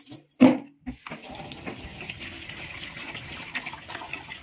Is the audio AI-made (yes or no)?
no